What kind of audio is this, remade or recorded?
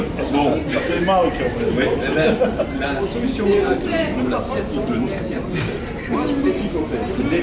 recorded